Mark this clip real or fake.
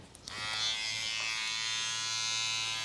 real